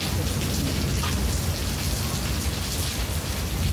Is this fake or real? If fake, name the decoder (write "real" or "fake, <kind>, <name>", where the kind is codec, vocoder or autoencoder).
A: real